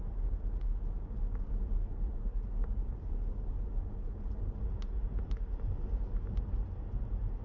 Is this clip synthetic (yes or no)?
no